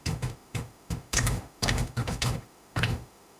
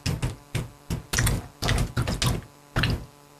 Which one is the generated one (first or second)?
first